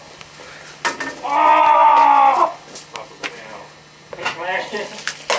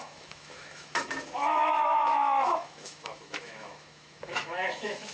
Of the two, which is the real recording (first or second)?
first